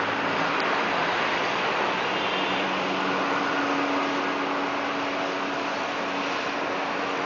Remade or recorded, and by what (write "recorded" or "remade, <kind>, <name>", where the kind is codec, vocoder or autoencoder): recorded